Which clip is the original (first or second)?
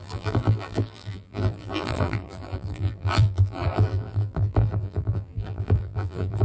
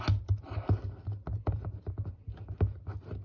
second